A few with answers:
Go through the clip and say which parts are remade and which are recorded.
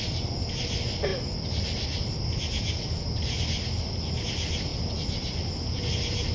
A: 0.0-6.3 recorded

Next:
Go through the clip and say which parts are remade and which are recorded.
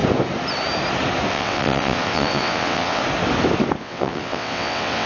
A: 0.0-1.3 recorded; 1.3-3.0 remade; 3.0-3.8 recorded; 3.8-5.1 remade